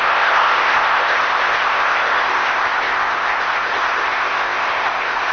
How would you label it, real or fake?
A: fake